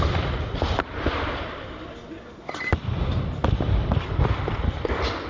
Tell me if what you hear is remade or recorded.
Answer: remade